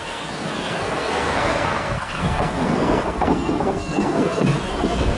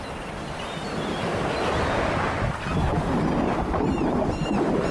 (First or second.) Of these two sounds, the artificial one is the first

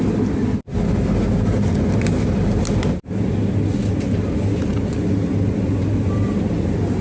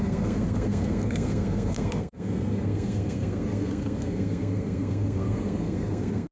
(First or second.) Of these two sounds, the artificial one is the second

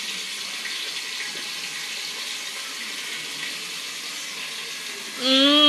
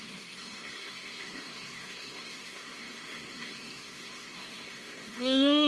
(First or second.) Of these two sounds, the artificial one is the second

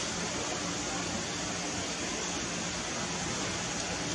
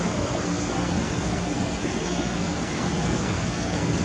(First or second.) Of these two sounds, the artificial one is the second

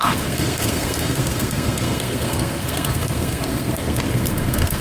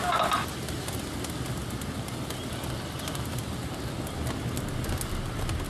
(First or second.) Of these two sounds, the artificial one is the first